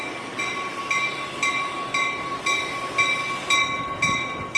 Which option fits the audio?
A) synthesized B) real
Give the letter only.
B